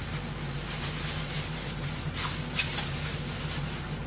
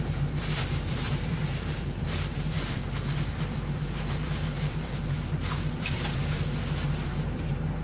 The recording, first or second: first